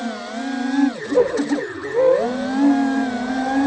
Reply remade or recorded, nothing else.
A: recorded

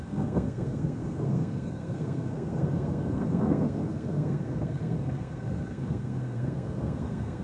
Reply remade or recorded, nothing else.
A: remade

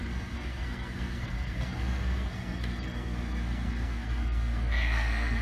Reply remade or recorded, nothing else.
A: remade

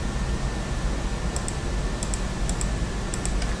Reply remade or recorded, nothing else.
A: recorded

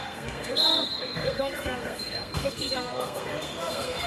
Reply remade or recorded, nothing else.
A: remade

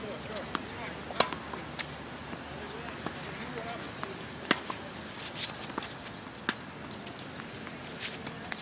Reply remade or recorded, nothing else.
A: recorded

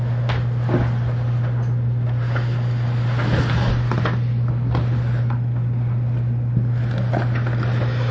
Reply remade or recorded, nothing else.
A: recorded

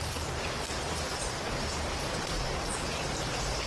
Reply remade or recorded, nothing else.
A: recorded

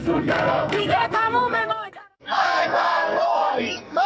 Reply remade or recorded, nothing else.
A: remade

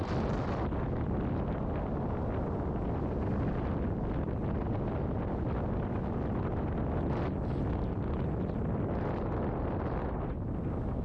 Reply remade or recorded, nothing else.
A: recorded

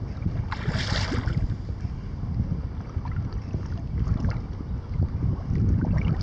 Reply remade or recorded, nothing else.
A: recorded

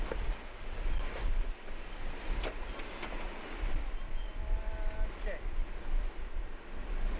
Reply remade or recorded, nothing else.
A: recorded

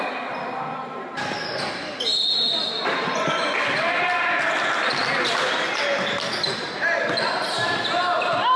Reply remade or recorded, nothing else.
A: recorded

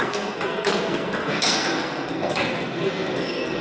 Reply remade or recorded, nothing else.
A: remade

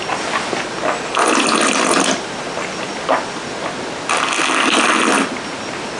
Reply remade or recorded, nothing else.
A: recorded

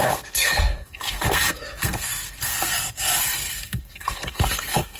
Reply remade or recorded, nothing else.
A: remade